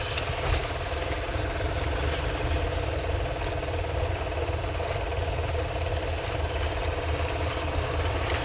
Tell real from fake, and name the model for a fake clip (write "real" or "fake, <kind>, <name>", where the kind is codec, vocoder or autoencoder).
real